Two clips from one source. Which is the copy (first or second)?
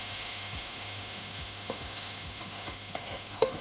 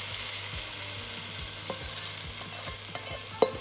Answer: first